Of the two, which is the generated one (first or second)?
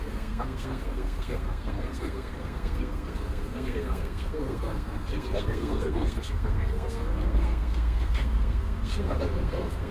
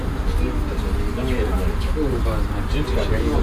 first